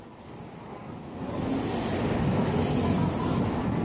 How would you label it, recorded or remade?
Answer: recorded